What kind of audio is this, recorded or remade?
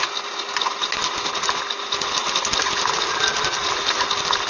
recorded